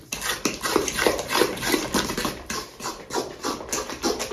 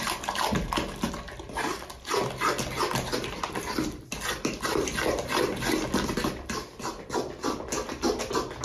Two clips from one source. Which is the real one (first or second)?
second